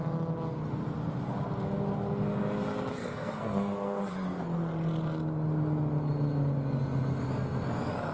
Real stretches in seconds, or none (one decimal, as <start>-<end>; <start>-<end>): 0.0-3.0; 4.0-8.1